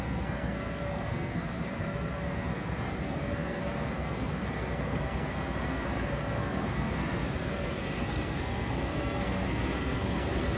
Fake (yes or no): yes